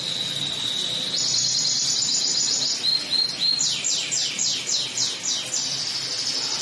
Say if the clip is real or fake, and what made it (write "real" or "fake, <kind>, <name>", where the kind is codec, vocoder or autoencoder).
real